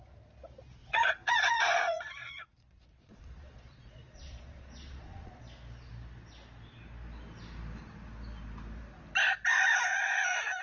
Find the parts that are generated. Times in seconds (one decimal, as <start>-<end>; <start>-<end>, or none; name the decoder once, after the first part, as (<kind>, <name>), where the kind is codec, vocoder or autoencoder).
0.8-5.4 (vocoder, Vocos); 9.9-10.6